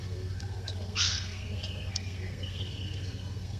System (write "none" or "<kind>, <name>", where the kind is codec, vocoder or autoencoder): codec, SNAC